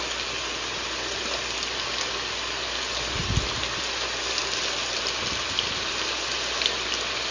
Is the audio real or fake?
real